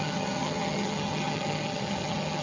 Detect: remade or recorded remade